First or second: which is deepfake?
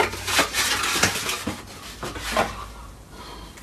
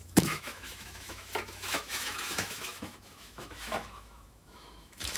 second